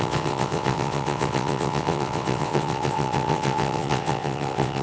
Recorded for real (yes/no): no